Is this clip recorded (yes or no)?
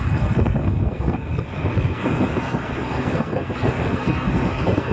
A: no